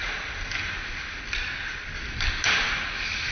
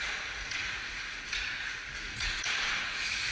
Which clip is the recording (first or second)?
first